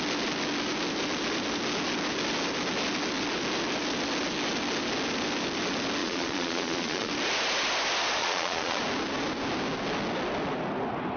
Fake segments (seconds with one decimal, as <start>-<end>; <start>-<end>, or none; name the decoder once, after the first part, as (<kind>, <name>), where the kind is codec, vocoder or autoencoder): 6.0-7.1 (vocoder, Vocos); 8.2-8.8